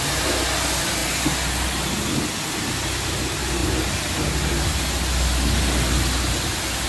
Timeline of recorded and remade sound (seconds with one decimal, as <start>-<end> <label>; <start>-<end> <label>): 0.0-6.9 recorded